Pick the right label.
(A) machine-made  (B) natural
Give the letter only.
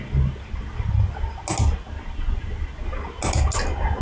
B